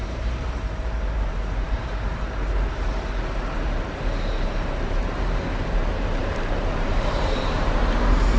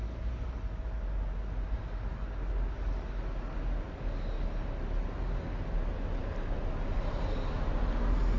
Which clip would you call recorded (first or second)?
second